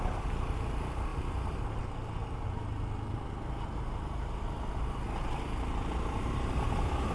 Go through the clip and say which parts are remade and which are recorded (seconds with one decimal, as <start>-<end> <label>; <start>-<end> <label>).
0.0-7.1 recorded

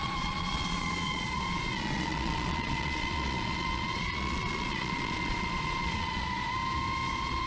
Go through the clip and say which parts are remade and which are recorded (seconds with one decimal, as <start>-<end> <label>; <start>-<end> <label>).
0.0-6.6 remade; 6.6-7.1 recorded; 7.1-7.5 remade

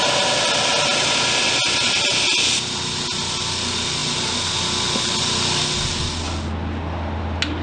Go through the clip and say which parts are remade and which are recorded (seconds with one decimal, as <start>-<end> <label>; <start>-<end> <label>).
0.0-7.6 recorded

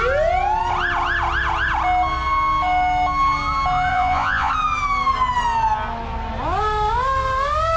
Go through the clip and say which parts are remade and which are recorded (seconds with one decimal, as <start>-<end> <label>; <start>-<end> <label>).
0.0-3.9 recorded; 3.9-4.5 remade; 4.5-7.8 recorded

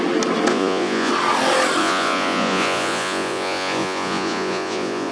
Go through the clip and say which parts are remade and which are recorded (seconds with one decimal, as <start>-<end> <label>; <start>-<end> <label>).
0.0-0.5 recorded; 0.5-1.1 remade; 1.1-1.8 recorded; 1.8-5.1 remade

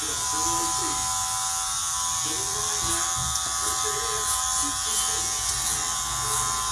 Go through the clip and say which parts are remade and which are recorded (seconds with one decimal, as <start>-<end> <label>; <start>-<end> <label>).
0.0-6.7 recorded